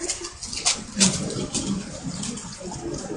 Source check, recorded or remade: recorded